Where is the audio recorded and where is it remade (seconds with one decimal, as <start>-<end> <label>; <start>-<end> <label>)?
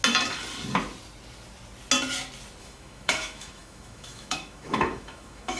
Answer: 0.0-2.6 recorded; 2.6-5.6 remade